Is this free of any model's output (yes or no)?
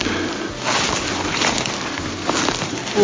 yes